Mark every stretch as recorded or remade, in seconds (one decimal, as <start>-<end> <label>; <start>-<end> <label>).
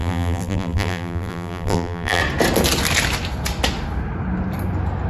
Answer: 0.0-2.2 remade; 2.2-5.1 recorded